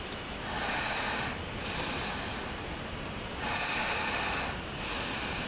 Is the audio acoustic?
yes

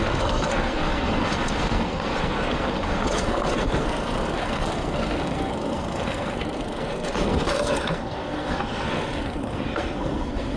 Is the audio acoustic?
no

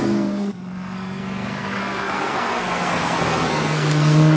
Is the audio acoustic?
no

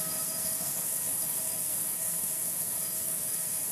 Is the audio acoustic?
no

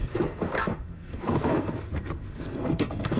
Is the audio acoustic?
no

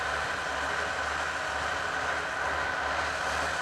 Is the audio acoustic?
yes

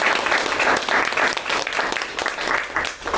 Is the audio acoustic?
yes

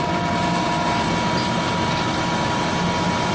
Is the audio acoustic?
yes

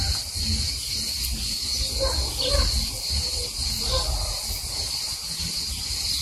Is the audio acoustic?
yes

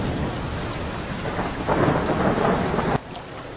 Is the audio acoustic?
yes